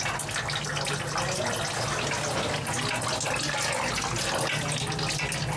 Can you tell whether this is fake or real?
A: real